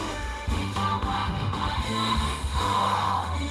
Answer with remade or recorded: remade